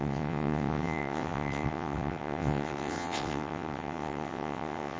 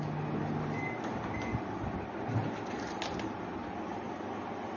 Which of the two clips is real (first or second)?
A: second